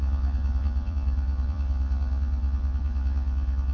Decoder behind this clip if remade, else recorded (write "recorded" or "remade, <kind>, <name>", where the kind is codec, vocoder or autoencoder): remade, vocoder, Vocos